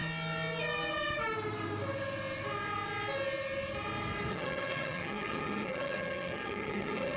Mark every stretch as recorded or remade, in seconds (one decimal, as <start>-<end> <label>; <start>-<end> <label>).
0.0-4.3 recorded; 4.3-7.2 remade